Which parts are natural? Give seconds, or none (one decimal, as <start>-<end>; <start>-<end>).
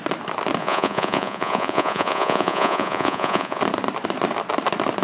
0.0-0.6; 3.6-5.0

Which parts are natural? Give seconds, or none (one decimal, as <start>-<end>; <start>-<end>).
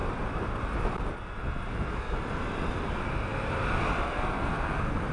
0.0-5.1